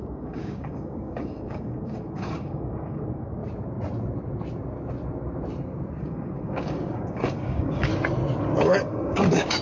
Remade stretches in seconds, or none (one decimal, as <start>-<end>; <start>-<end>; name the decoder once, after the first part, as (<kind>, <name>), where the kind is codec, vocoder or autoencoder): 0.0-3.4 (codec, DAC); 6.0-7.9; 8.6-9.6

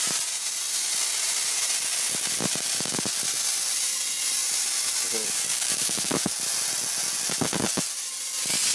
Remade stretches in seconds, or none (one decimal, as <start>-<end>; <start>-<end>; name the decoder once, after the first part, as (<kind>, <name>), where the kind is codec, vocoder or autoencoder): 5.5-6.3 (codec, DAC)

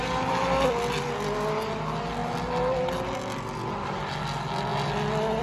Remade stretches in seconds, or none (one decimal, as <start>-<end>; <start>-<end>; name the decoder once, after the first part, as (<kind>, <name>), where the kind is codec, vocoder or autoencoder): none

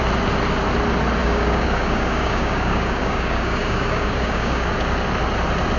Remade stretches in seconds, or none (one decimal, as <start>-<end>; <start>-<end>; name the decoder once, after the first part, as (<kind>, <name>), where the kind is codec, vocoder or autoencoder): 1.2-4.7 (codec, DAC)

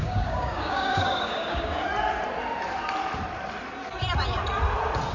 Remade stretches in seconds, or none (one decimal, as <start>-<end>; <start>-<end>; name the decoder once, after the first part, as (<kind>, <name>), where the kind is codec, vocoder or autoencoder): 0.0-1.9 (codec, DAC)

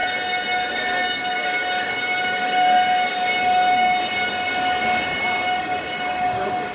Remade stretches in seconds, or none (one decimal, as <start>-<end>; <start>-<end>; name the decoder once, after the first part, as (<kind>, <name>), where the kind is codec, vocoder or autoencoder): 0.7-4.0 (codec, DAC); 5.6-6.7